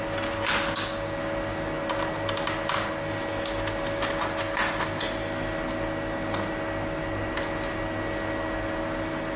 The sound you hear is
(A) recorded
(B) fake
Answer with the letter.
A